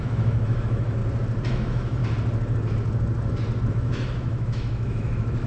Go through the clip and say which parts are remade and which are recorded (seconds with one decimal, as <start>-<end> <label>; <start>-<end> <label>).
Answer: 0.0-1.0 remade; 1.0-1.5 recorded; 1.5-2.0 remade; 2.0-3.7 recorded; 3.7-5.5 remade